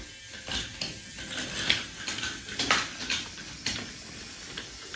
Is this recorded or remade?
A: recorded